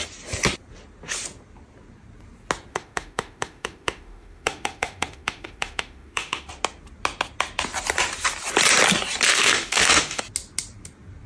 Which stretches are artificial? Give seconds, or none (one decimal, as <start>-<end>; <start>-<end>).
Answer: 2.7-6.5; 9.3-10.2